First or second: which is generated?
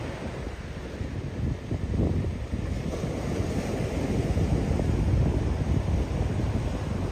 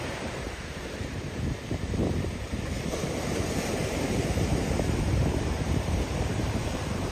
second